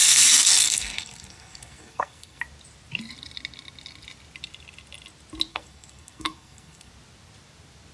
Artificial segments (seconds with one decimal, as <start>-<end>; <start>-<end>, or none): 0.0-2.4; 5.5-6.9